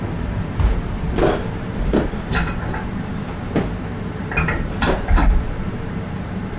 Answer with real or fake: fake